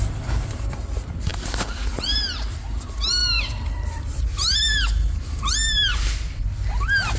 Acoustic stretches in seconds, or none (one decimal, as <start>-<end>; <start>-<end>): 0.0-7.2